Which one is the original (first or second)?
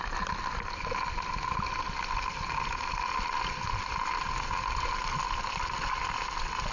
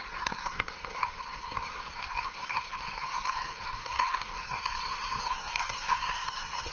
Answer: first